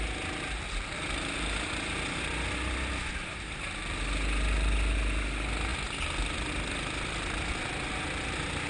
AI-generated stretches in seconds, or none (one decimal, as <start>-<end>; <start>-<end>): none